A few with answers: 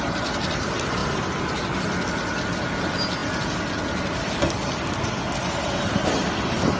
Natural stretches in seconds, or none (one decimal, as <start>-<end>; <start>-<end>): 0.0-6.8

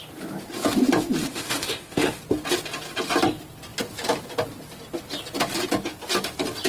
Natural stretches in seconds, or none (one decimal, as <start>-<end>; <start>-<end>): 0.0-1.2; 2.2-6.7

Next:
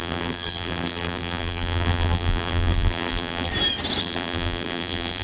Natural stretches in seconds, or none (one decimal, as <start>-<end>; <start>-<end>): 3.5-4.0

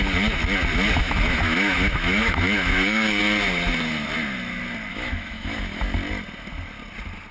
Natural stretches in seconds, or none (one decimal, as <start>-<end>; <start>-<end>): 0.0-1.0; 3.2-4.9; 5.8-7.3